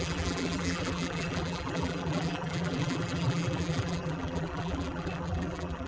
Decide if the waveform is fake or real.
fake